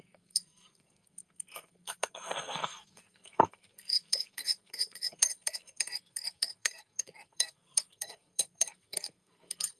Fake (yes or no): yes